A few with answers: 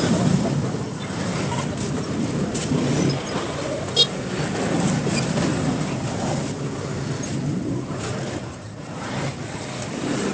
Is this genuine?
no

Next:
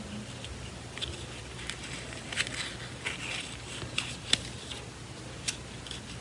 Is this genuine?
yes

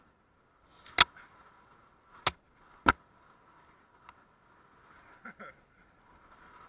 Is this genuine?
yes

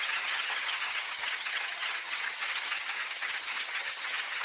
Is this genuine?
no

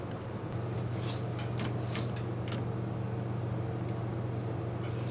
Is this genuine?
yes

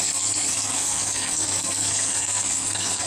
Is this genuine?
no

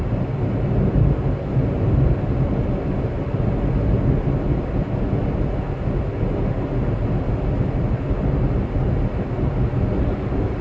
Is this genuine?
yes